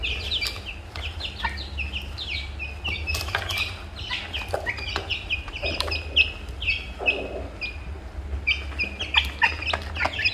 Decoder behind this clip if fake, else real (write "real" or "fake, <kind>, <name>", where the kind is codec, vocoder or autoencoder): real